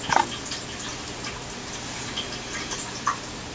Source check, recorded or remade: recorded